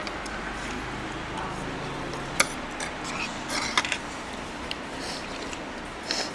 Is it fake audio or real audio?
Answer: real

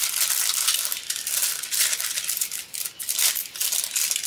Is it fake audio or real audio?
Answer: real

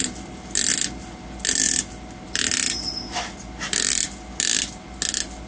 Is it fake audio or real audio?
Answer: real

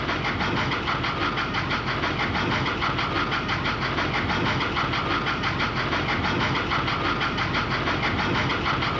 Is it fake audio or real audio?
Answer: real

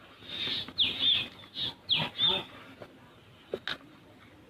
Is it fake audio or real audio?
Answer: real